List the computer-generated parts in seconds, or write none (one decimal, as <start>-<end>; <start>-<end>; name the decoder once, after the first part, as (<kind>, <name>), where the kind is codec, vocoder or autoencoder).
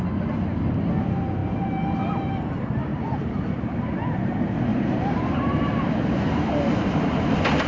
2.9-4.3 (vocoder, BigVGAN v2); 4.7-6.5